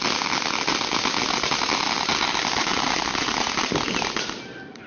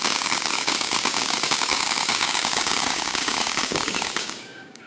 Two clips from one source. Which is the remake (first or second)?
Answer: second